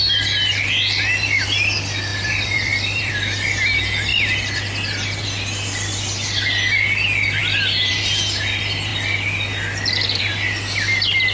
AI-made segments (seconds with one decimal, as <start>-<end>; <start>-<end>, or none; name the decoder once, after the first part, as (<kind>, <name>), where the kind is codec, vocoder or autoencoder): 2.1-3.1 (vocoder, BigVGAN v2)